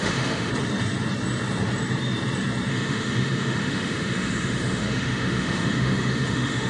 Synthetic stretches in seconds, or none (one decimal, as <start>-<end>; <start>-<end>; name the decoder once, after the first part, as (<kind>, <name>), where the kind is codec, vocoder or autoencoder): 0.0-0.5 (autoencoder, DAC-VAE); 2.7-6.7